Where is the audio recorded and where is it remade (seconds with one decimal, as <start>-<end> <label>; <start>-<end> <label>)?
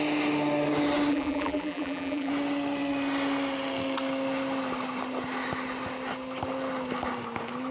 0.0-1.1 recorded; 1.1-2.3 remade; 2.3-7.7 recorded